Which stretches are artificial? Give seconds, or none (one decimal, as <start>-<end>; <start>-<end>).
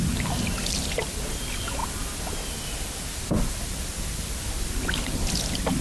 none